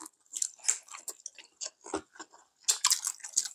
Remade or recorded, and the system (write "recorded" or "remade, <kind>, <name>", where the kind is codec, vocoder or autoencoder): recorded